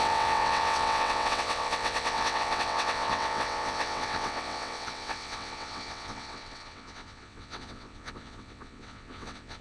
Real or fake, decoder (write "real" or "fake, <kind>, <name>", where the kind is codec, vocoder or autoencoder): fake, vocoder, WaveNeXt